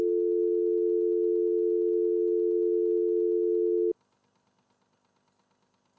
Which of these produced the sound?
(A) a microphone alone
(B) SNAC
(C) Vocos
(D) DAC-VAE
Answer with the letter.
A